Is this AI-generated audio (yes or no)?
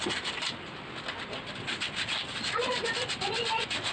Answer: no